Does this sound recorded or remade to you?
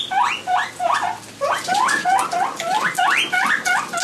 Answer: recorded